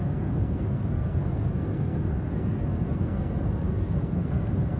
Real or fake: fake